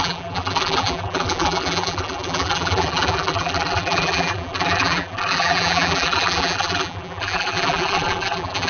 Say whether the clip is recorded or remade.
remade